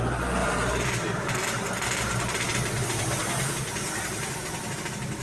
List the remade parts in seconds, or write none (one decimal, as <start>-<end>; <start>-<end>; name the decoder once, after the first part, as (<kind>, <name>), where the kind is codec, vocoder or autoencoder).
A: 0.4-3.5 (vocoder, BigVGAN v2)